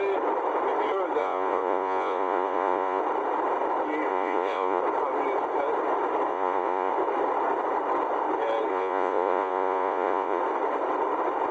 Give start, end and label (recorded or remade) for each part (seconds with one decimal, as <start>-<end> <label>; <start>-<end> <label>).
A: 0.0-1.2 recorded; 1.2-3.0 remade; 3.0-4.1 recorded; 4.1-4.8 remade; 4.8-6.3 recorded; 6.3-6.9 remade; 6.9-8.7 recorded; 8.7-10.4 remade; 10.4-11.5 recorded